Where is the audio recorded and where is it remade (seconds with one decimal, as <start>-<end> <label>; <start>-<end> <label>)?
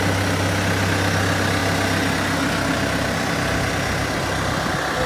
0.0-5.1 recorded